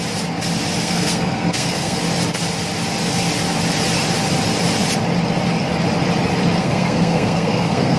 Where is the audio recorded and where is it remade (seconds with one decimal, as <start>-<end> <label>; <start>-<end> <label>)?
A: 0.0-0.8 recorded; 0.8-2.0 remade; 2.0-6.6 recorded; 6.6-8.0 remade